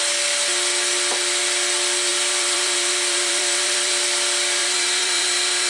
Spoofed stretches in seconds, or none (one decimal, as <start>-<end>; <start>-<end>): 2.1-3.9; 4.6-5.7